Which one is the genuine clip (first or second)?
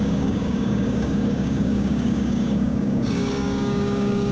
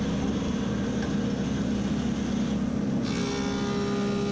second